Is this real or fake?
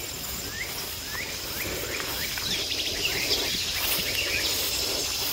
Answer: real